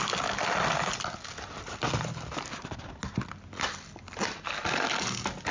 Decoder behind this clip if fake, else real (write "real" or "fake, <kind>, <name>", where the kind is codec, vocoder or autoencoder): real